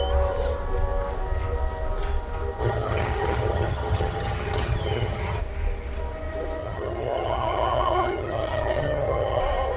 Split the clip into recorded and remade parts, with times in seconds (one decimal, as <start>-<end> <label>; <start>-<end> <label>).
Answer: 0.0-2.6 recorded; 2.6-5.4 remade; 5.4-6.6 recorded; 6.6-9.4 remade; 9.4-9.8 recorded